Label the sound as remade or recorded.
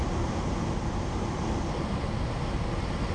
recorded